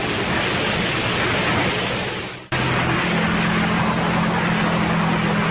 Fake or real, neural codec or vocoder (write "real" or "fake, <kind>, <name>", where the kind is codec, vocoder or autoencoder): real